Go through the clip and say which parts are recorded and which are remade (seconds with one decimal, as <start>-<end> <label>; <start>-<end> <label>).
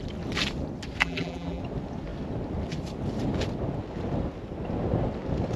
0.0-1.0 recorded; 1.0-1.6 remade; 1.6-5.6 recorded